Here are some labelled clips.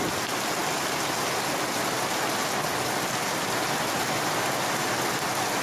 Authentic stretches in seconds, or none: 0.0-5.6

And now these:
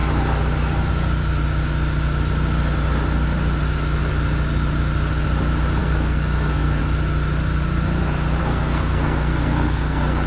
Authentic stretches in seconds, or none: 0.0-5.8; 6.8-8.4

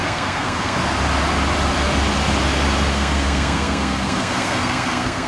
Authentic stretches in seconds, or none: 0.8-2.9